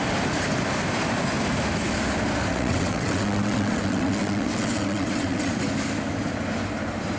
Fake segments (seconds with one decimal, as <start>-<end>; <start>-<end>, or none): 2.5-5.6